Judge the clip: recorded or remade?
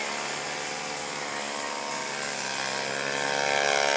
recorded